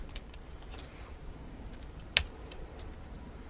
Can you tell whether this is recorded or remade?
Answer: remade